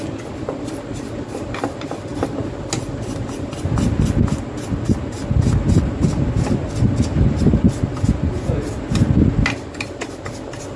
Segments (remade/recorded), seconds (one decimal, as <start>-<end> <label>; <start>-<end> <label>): 0.0-10.8 recorded